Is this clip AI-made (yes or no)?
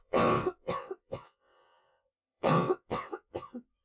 yes